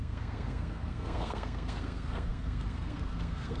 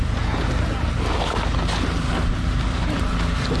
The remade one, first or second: first